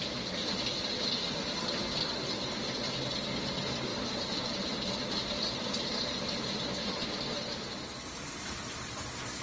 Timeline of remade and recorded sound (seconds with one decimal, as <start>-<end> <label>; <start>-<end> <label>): 0.0-3.9 recorded; 3.9-4.9 remade; 4.9-9.4 recorded